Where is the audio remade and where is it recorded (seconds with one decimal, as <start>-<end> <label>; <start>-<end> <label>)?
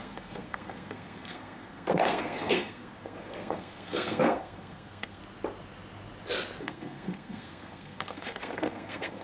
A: 0.0-5.2 remade; 5.2-6.6 recorded; 6.6-9.2 remade